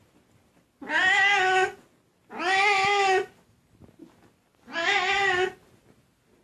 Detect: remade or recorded recorded